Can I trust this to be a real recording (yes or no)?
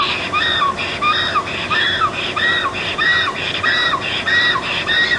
yes